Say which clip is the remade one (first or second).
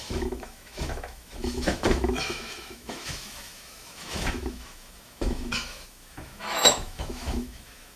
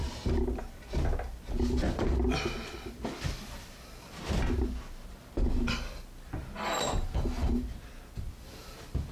first